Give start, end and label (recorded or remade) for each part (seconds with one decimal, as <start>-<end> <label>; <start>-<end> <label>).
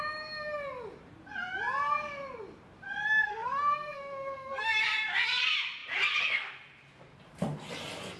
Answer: 0.0-3.2 recorded; 3.2-4.8 remade; 4.8-8.2 recorded